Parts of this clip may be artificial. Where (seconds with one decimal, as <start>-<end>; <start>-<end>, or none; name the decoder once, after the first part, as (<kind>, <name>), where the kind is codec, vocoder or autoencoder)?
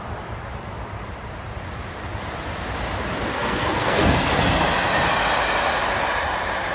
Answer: 3.3-4.2 (codec, SNAC)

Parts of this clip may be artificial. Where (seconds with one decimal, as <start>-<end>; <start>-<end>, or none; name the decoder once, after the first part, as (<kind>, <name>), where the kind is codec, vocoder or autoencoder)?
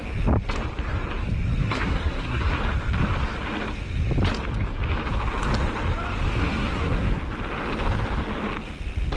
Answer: 1.6-2.5 (codec, SNAC); 6.4-7.2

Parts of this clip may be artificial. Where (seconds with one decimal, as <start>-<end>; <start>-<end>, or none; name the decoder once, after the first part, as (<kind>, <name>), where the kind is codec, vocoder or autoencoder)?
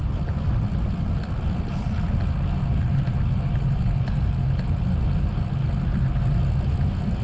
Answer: none